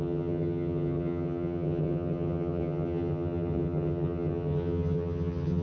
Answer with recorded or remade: remade